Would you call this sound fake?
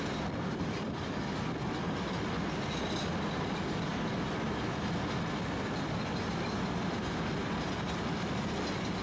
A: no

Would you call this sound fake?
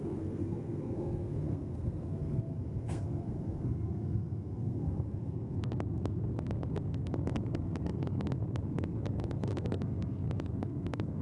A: yes